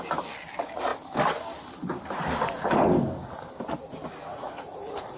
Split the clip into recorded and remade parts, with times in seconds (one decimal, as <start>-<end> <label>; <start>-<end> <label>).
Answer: 0.0-4.3 recorded; 4.3-5.2 remade